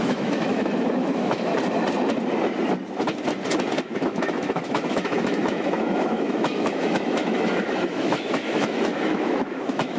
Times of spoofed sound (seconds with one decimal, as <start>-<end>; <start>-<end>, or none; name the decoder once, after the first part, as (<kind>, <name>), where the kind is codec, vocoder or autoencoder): 0.0-1.5 (autoencoder, DAC-VAE); 3.8-10.0